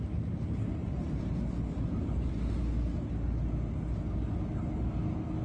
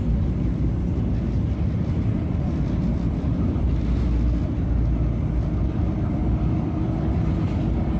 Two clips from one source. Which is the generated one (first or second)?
second